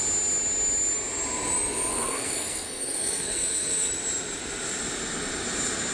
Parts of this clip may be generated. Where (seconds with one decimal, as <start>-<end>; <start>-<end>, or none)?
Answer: 1.9-3.9